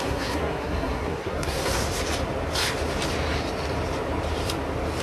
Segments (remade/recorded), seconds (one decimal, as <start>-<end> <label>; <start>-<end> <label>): 0.0-1.8 remade; 1.8-5.0 recorded